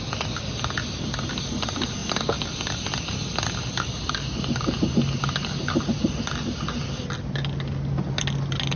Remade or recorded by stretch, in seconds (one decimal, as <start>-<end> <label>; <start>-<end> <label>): 0.0-8.8 recorded